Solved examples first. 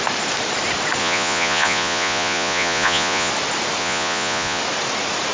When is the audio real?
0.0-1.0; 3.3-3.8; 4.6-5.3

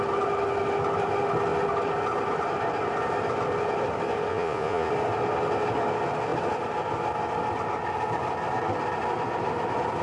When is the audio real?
0.0-4.3; 4.9-10.0

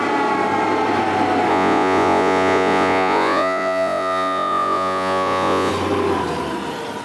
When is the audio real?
0.0-1.5; 5.7-7.0

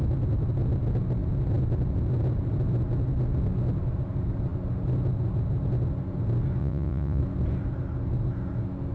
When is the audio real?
0.0-6.6; 7.2-8.9